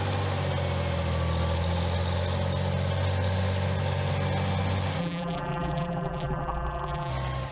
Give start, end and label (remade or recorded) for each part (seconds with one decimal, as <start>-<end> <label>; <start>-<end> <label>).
0.0-5.0 recorded; 5.0-7.1 remade; 7.1-7.5 recorded